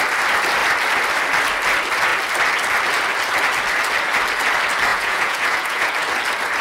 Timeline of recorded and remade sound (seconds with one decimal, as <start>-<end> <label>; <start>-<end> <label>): 0.0-4.9 recorded; 4.9-5.9 remade; 5.9-6.6 recorded